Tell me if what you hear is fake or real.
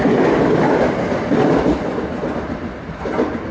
real